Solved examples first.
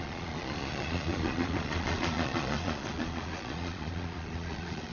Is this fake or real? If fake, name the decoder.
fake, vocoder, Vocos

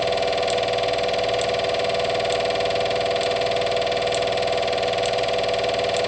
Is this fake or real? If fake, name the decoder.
real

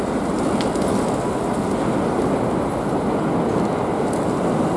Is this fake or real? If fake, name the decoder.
real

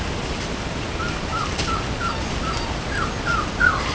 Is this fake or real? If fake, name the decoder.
real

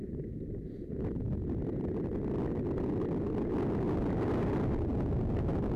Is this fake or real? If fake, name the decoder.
real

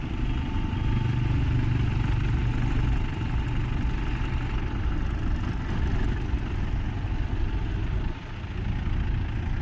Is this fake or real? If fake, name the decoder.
real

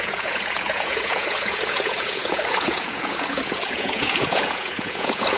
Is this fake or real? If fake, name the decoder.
fake, vocoder, Vocos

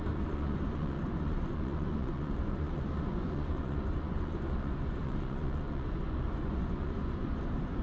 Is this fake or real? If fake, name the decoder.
fake, vocoder, Vocos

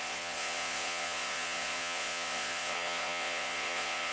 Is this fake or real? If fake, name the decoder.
fake, vocoder, Vocos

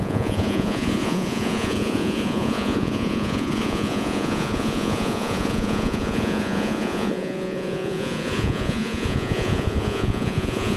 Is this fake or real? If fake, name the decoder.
fake, vocoder, Vocos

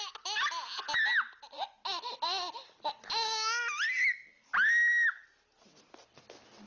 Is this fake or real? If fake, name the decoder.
real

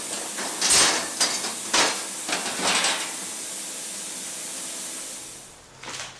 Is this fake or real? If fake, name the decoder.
real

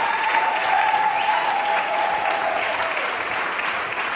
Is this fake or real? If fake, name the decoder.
fake, vocoder, Vocos